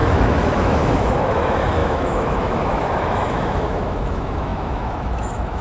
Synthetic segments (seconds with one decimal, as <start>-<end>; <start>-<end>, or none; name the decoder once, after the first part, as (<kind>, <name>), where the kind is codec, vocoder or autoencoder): 0.0-5.6 (autoencoder, DAC-VAE)